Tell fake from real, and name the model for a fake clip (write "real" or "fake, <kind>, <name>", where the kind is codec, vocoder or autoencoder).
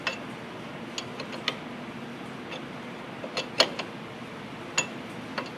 real